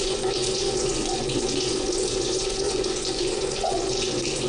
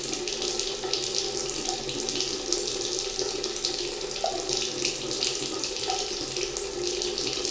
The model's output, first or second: first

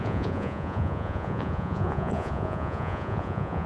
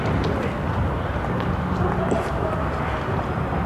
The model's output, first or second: first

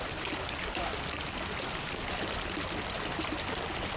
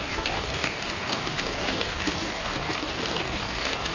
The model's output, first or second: second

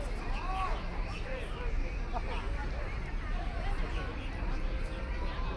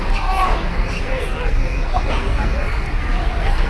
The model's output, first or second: second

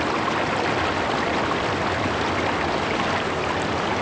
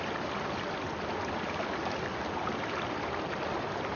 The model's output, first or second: second